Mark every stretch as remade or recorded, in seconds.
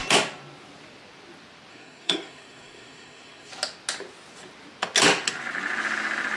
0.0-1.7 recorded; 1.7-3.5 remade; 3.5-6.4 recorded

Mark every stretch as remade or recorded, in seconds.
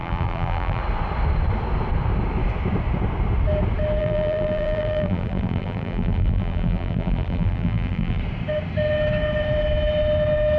0.0-0.8 remade; 0.8-4.0 recorded; 4.0-8.2 remade; 8.2-10.6 recorded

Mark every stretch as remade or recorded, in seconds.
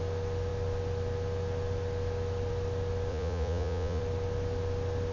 0.0-3.1 recorded; 3.1-4.0 remade; 4.0-5.1 recorded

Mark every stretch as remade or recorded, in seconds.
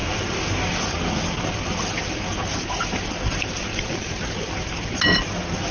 0.0-3.7 recorded; 3.7-4.3 remade; 4.3-5.7 recorded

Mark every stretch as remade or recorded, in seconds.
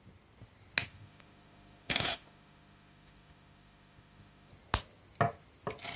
0.0-0.9 recorded; 0.9-4.5 remade; 4.5-6.0 recorded